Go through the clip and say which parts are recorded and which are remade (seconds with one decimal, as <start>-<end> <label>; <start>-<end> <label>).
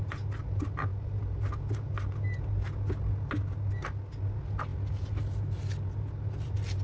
0.0-6.8 recorded